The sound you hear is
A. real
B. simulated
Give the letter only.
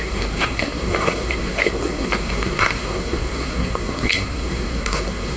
B